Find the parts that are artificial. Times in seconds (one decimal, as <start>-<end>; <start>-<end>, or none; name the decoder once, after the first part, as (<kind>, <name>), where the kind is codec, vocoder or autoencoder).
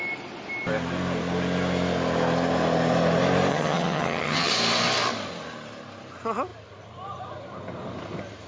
3.5-4.5 (vocoder, HiFi-GAN)